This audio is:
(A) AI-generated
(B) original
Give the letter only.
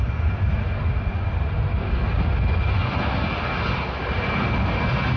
B